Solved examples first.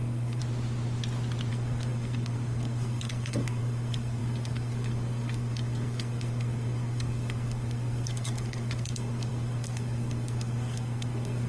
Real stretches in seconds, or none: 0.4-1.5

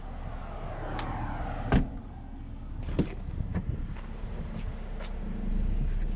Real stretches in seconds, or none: 0.0-2.0; 2.8-6.2

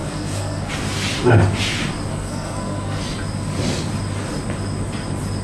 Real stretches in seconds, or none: 0.7-2.1; 3.0-5.4

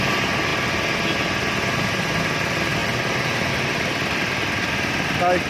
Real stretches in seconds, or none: 0.0-5.5

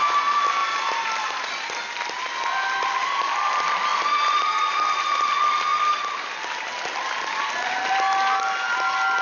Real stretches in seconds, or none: 0.0-9.2

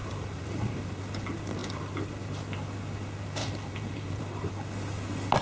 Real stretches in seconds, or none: 1.0-3.4; 4.2-5.4

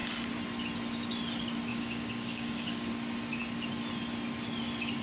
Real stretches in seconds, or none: 0.0-1.7; 2.9-5.0